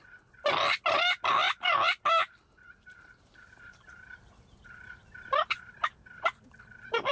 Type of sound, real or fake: real